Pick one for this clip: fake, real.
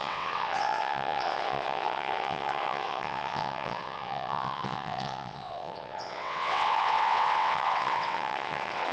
fake